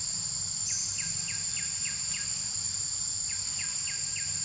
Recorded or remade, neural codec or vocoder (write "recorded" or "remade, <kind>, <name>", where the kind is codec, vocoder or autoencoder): recorded